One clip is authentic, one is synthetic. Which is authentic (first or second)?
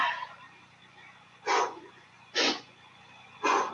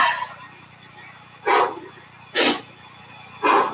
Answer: second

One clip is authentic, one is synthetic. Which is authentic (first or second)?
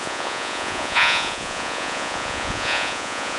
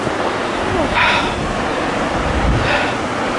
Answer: second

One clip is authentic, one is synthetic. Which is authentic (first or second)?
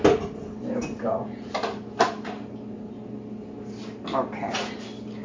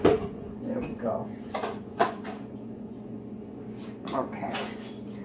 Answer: first